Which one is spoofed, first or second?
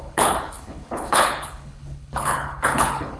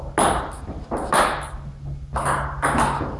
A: first